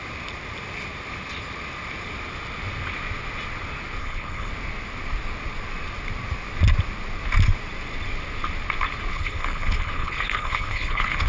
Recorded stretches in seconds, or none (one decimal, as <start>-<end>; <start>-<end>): 0.0-4.0; 4.5-9.1